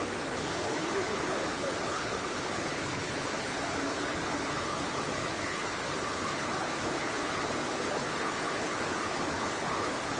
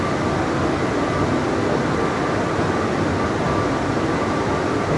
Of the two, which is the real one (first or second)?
second